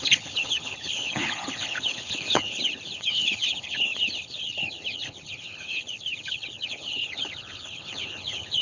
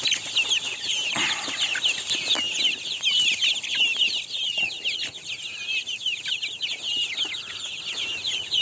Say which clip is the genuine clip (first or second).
second